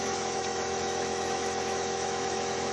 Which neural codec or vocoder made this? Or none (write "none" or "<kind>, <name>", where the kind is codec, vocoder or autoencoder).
autoencoder, DAC-VAE